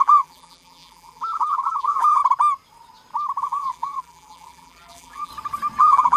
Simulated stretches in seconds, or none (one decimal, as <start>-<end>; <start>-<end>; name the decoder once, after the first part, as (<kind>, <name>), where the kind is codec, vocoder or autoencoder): 0.0-2.2 (vocoder, BigVGAN v2); 3.4-5.3; 5.8-6.2